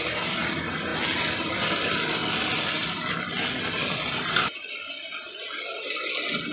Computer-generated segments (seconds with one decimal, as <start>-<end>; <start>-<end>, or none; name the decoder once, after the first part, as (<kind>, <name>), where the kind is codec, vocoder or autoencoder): none